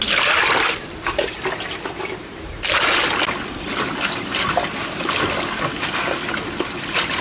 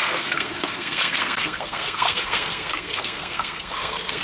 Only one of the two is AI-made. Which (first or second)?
second